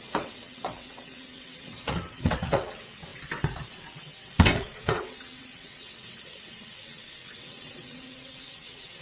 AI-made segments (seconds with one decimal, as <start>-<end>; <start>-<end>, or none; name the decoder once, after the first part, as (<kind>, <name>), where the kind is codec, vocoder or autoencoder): 0.0-9.0 (vocoder, WaveNeXt)